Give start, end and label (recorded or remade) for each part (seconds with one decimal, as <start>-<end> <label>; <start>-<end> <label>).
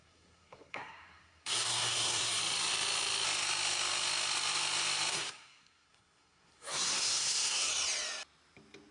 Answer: 0.0-2.4 remade; 2.4-5.1 recorded; 5.1-7.7 remade; 7.7-8.9 recorded